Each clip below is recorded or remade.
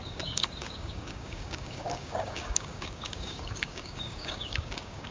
remade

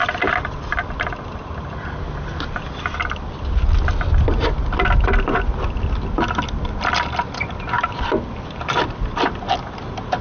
recorded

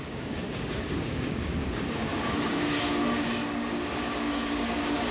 remade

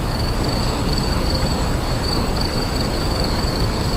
remade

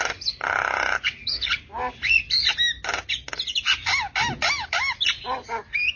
recorded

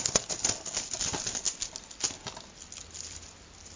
recorded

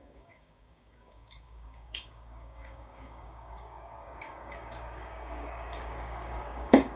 remade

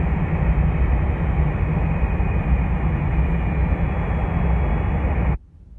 recorded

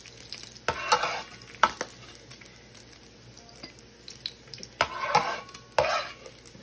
recorded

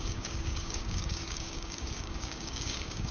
remade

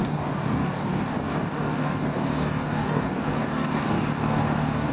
remade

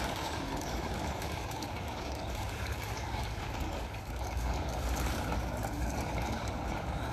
remade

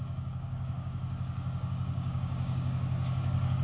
remade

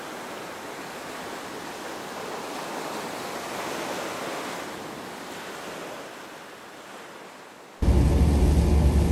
recorded